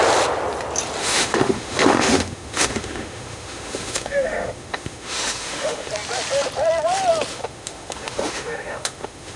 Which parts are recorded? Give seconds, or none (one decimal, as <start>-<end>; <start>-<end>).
0.0-1.0; 5.9-7.3